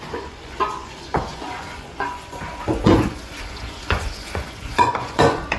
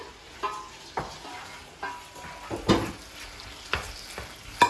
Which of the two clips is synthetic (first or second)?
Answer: first